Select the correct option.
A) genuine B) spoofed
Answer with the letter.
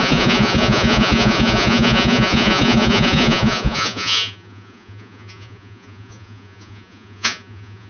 B